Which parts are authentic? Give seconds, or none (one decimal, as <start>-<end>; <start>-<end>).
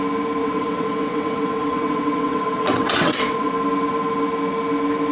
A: 0.0-0.4; 3.5-5.1